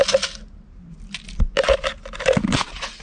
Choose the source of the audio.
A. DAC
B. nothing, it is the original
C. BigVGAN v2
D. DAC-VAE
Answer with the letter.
B